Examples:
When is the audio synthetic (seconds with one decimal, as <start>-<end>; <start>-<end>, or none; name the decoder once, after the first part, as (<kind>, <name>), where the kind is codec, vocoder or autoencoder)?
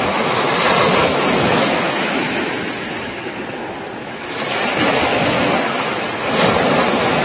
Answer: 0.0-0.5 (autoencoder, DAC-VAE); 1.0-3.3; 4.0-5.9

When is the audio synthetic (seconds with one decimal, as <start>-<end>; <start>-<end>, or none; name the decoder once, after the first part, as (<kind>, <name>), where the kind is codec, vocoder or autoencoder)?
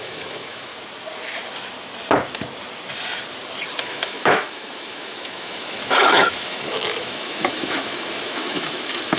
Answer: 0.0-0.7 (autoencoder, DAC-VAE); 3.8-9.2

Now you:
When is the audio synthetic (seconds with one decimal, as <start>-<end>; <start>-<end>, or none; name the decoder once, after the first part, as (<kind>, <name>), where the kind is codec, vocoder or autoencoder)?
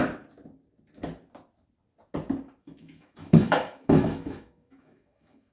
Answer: 2.6-5.5 (autoencoder, DAC-VAE)